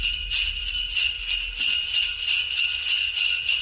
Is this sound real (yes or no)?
yes